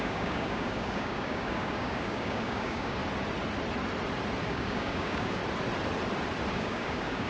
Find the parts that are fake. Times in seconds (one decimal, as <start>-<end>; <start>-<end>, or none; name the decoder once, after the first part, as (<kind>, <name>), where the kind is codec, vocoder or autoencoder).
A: 0.0-3.0 (codec, DAC); 4.4-5.4; 6.5-7.3